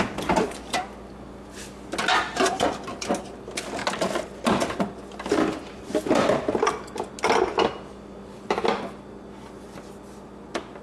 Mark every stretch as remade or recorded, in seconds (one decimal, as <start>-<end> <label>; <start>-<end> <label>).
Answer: 0.0-10.8 recorded

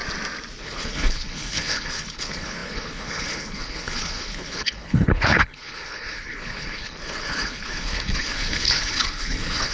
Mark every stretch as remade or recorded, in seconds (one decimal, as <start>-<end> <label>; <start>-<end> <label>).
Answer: 0.0-0.6 recorded; 0.6-9.7 remade

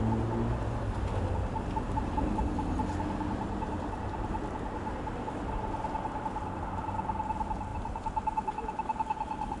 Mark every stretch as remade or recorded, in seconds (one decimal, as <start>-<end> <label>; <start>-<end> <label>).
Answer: 0.0-9.6 recorded

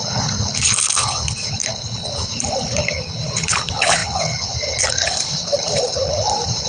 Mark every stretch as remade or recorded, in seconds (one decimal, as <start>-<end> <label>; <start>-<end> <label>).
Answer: 0.0-6.7 remade